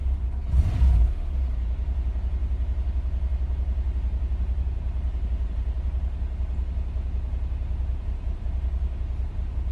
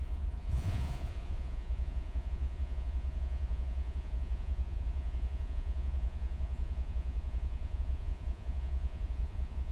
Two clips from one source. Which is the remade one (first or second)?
second